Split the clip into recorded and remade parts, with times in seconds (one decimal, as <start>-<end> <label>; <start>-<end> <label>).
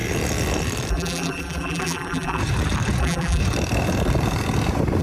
0.0-0.9 recorded; 0.9-2.4 remade; 2.4-3.0 recorded; 3.0-3.4 remade; 3.4-5.0 recorded